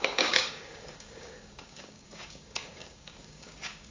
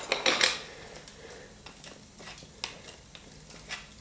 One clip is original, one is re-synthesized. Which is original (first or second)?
second